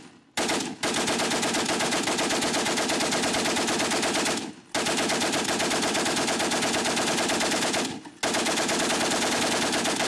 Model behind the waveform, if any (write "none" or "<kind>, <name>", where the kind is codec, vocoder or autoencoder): none